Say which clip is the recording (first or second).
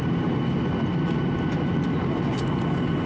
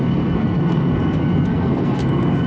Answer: first